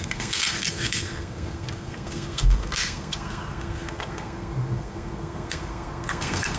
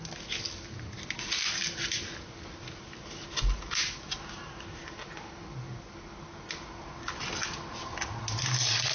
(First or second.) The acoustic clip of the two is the second